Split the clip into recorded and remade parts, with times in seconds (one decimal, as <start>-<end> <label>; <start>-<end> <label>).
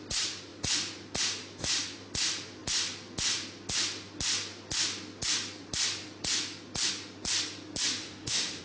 0.0-8.0 recorded; 8.0-8.6 remade